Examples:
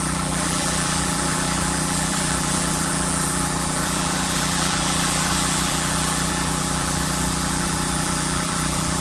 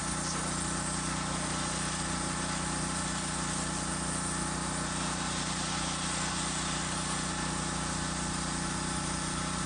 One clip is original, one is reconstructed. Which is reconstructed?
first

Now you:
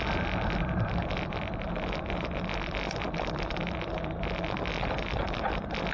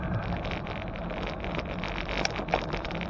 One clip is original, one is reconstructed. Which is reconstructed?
first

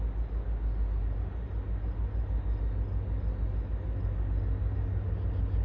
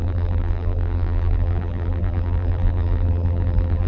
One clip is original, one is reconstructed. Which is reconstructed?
second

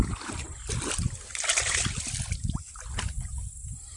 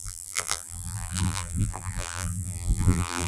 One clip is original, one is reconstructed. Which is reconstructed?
second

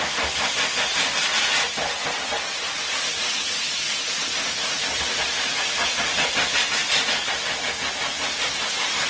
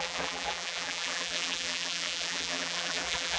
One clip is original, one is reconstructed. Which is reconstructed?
second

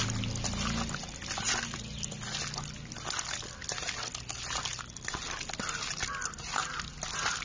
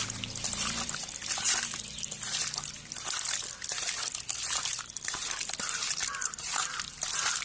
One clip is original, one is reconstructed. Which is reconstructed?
second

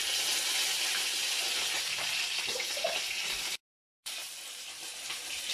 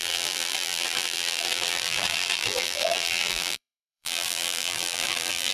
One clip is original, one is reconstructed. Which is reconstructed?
second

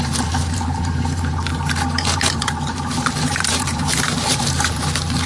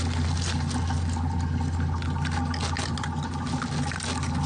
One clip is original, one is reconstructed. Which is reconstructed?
first